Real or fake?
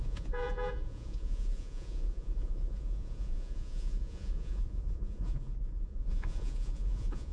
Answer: fake